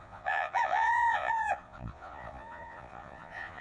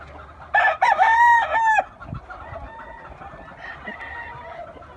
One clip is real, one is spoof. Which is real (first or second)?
second